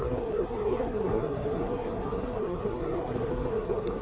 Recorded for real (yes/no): no